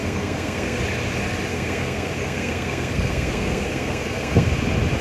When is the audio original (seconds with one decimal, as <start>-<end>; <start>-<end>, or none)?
0.8-1.5; 4.5-5.0